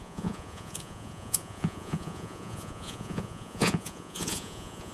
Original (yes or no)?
no